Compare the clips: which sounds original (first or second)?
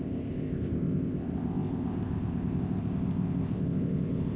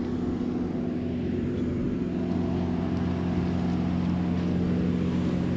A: second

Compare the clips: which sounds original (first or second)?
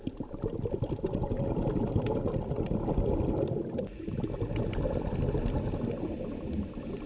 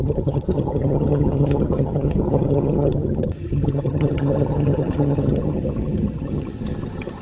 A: first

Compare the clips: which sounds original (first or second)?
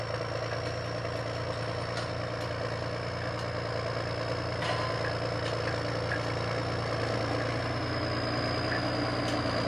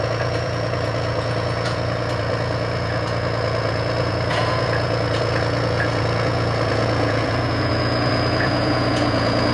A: first